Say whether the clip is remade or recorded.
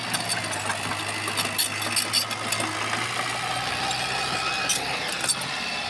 recorded